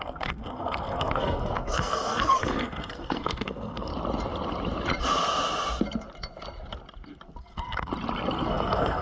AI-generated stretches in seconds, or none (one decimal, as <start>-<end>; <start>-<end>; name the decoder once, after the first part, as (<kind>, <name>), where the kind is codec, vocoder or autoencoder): 0.0-3.9 (codec, SNAC); 7.4-7.9; 8.5-9.0